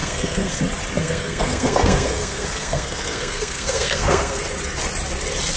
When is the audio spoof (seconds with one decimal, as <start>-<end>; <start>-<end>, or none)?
0.0-0.6; 1.0-4.4